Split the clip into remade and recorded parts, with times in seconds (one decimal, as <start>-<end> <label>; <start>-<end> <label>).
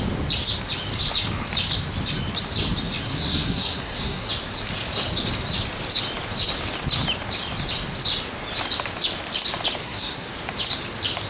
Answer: 0.0-3.1 recorded; 3.1-4.3 remade; 4.3-9.8 recorded; 9.8-10.3 remade; 10.3-11.3 recorded